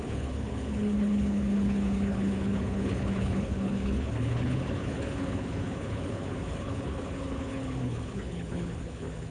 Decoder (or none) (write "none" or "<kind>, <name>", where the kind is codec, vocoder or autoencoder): codec, HILCodec